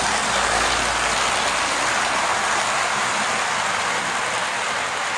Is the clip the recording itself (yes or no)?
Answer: yes